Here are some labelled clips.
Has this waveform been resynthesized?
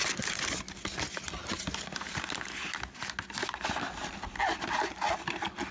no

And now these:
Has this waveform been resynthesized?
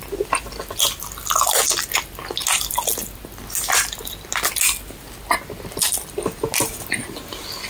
no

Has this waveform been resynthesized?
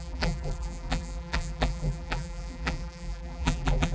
yes